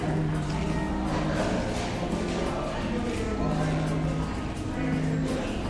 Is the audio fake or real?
real